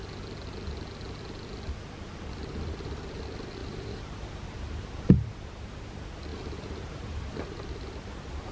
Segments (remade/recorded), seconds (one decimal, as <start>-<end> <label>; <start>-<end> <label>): 0.0-3.6 recorded; 3.6-5.5 remade; 5.5-8.5 recorded